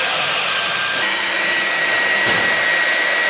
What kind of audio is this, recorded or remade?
recorded